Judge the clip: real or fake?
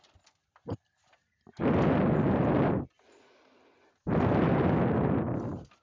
real